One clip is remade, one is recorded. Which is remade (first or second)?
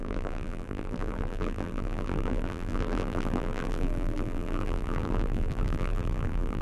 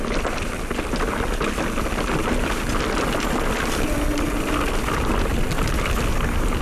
first